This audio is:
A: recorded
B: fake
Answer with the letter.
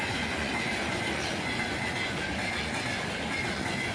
B